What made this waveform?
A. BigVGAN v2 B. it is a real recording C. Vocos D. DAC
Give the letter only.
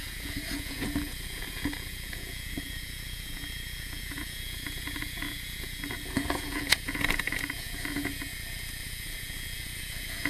C